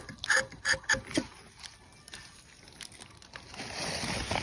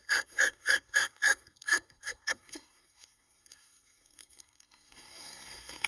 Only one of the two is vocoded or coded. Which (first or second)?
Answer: second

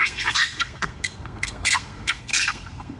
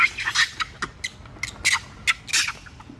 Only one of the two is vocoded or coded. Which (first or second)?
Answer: first